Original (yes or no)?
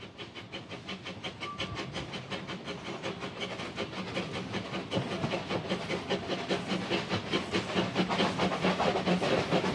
yes